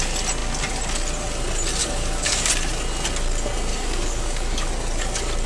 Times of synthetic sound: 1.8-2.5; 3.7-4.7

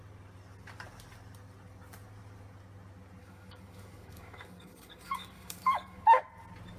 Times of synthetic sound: 3.2-6.2

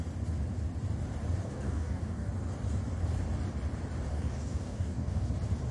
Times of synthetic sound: 1.4-2.3; 4.1-5.3

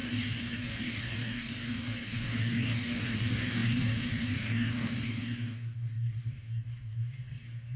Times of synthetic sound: 0.0-7.8

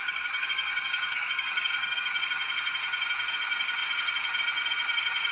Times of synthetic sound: 0.0-2.2

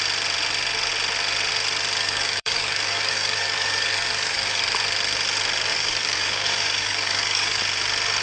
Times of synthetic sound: 2.0-4.6; 5.7-7.6

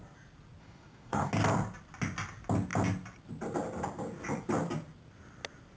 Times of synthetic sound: 0.6-1.3

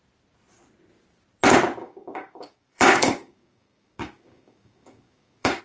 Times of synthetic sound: 1.8-5.6